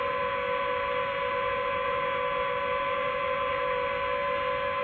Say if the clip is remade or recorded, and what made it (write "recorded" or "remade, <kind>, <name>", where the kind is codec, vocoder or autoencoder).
recorded